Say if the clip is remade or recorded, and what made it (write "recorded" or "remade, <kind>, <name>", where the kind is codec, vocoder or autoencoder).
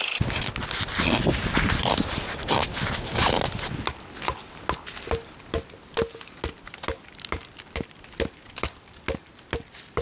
recorded